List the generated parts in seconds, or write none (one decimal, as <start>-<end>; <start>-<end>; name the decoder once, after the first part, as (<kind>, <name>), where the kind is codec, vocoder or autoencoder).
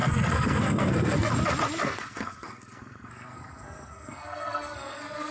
0.0-1.3 (codec, SNAC); 1.8-5.3